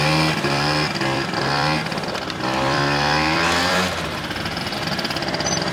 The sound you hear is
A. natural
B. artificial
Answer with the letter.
B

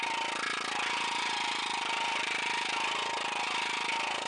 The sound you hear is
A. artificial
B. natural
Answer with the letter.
A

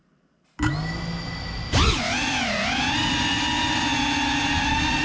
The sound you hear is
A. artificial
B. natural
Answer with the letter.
B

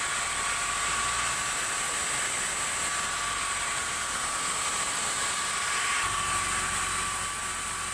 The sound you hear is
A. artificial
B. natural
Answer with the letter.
B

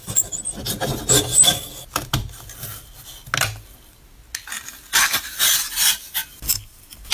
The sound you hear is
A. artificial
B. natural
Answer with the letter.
B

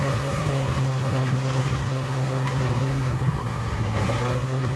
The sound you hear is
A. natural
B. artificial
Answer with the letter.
B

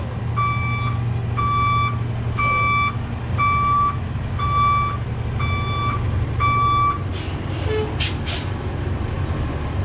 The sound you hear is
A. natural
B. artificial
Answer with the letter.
A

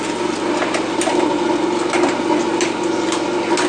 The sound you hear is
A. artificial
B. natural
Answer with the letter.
B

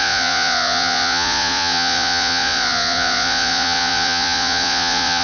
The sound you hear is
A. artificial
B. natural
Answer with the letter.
A